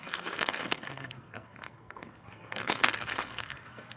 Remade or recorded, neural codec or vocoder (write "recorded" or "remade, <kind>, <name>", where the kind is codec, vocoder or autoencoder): remade, codec, SNAC